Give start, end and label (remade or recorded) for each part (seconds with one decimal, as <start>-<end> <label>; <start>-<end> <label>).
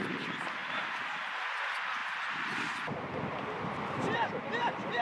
0.0-0.6 recorded; 0.6-1.2 remade; 1.2-2.0 recorded; 2.0-5.0 remade